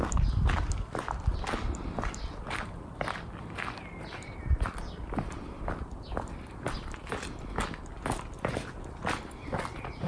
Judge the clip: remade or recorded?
recorded